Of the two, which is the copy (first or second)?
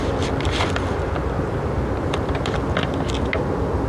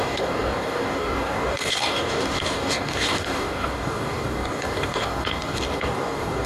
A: second